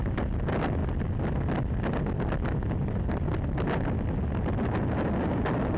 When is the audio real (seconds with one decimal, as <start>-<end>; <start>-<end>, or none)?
0.0-5.8

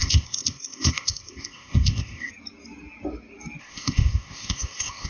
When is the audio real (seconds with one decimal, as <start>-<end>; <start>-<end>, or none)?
2.3-3.6

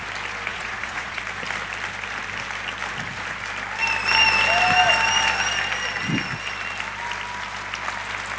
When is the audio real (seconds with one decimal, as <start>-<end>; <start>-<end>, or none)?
0.0-0.5; 1.2-8.4